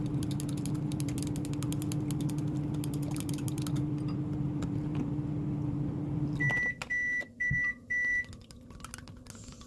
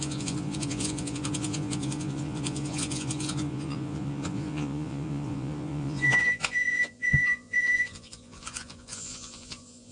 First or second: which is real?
first